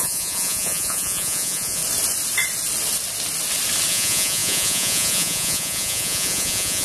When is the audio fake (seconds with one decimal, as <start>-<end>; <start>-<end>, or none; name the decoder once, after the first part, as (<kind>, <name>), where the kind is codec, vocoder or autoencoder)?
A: 0.0-1.8 (vocoder, Vocos); 3.9-6.8